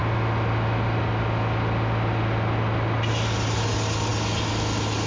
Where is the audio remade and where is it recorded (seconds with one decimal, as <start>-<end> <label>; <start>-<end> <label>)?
0.0-5.1 recorded